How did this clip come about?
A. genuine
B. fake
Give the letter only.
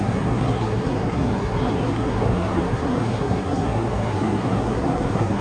B